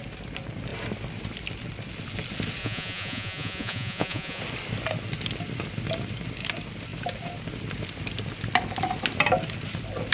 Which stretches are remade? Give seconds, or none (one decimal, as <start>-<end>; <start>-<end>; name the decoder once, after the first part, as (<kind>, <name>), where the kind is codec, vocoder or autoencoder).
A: 2.6-4.4 (vocoder, Vocos)